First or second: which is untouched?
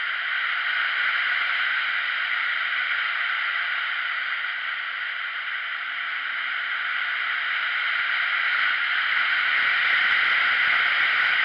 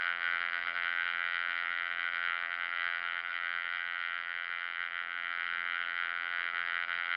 first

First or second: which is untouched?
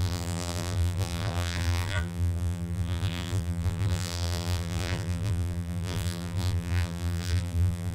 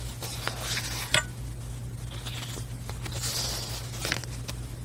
second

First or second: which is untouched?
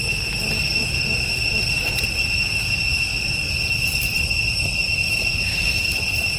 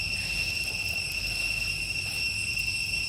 second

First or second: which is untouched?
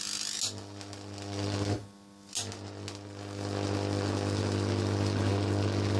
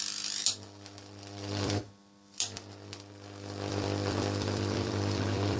first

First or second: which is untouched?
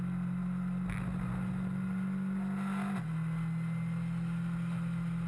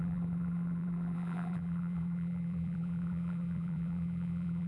first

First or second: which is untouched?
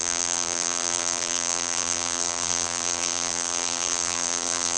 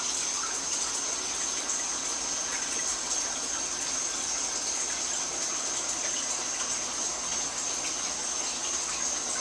second